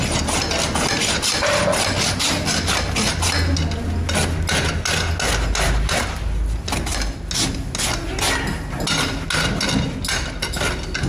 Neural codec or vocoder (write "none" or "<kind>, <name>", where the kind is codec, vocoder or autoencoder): none